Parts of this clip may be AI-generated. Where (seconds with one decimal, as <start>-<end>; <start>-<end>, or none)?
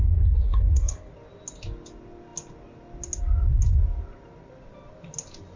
0.0-1.1